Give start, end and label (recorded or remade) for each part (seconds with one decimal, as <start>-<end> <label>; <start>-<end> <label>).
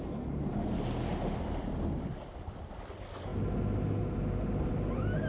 0.0-5.3 recorded